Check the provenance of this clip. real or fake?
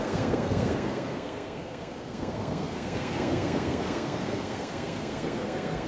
fake